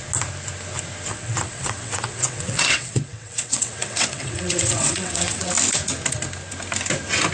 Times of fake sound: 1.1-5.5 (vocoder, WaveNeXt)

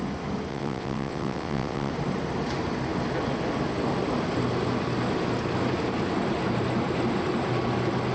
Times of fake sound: 0.5-1.9 (vocoder, WaveNeXt)